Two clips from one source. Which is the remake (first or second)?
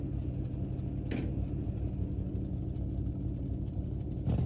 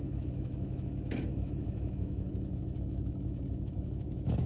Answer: second